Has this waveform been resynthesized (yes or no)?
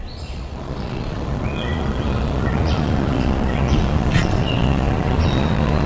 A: yes